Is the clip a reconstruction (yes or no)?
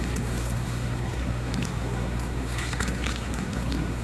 yes